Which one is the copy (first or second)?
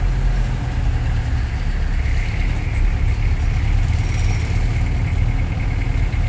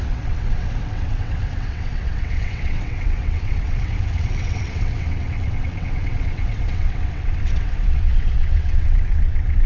second